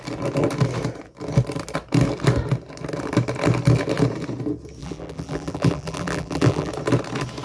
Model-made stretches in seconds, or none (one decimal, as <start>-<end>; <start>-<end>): 4.8-6.7